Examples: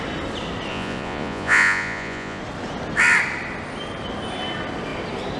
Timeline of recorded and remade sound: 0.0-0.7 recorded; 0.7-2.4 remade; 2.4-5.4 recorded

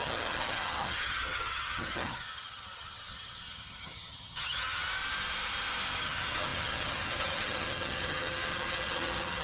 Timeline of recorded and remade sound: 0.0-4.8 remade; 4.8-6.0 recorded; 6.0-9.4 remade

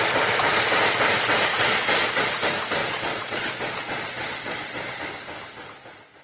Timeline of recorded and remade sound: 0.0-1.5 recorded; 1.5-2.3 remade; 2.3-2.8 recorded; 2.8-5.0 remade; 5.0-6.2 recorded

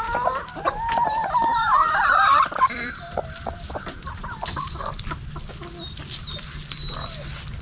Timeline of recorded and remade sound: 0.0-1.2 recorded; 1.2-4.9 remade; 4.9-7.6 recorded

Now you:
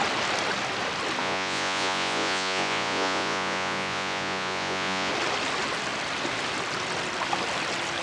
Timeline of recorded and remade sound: 0.0-1.2 recorded; 1.2-5.1 remade; 5.1-8.0 recorded

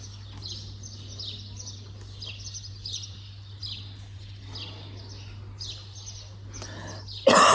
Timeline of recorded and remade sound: 0.0-7.5 recorded

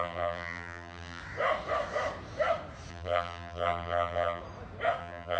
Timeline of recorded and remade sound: 0.0-1.2 remade; 1.2-2.9 recorded; 2.9-4.4 remade; 4.4-5.0 recorded; 5.0-5.4 remade

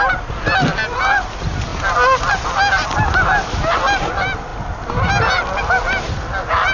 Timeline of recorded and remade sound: 0.0-6.7 recorded